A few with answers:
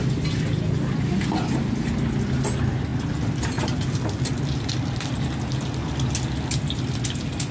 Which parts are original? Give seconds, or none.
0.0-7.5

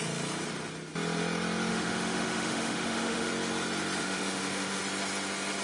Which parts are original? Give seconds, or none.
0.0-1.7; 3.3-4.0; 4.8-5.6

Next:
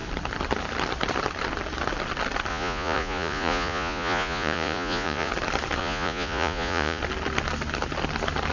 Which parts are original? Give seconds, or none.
0.0-2.5; 5.3-5.8; 7.0-8.5

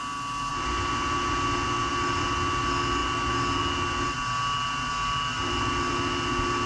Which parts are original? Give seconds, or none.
0.0-6.7

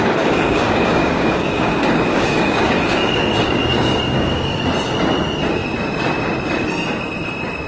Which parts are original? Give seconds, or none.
4.6-7.7